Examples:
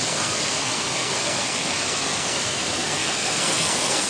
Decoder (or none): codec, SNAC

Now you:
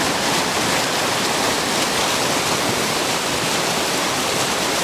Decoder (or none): none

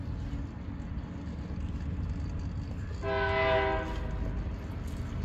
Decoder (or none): none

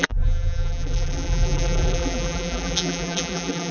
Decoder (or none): vocoder, BigVGAN v2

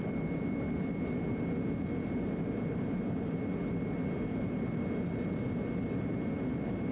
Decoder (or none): none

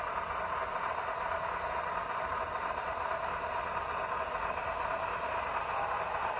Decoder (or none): none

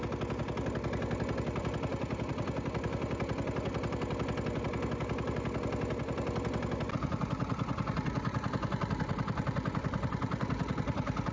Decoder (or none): none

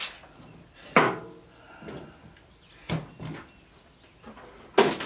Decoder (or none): none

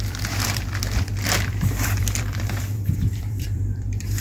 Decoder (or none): vocoder, BigVGAN v2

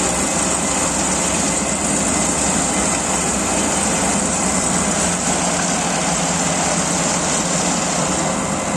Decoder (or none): none